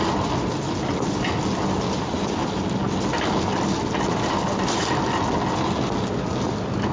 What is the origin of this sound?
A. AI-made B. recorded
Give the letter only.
B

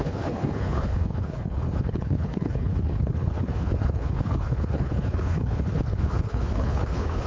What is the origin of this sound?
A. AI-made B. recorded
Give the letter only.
A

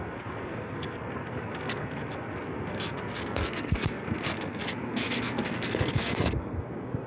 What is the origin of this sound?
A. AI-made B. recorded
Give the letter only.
A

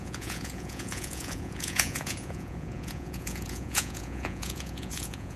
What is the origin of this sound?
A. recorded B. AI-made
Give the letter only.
B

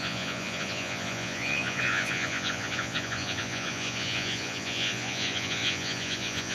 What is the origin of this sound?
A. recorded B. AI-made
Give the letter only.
B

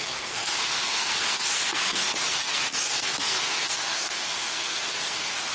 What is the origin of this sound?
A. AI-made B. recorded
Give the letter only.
A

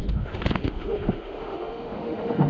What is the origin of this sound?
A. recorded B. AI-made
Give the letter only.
B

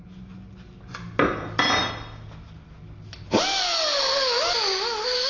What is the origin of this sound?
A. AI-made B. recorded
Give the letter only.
B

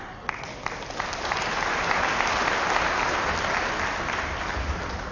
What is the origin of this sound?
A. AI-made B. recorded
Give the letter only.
B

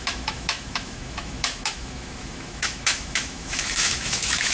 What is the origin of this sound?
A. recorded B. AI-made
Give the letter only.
B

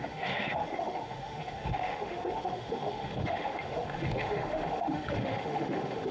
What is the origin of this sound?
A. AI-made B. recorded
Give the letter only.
A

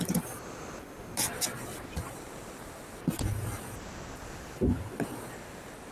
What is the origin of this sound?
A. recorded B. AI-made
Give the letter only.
A